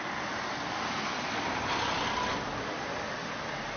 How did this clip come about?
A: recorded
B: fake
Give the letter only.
A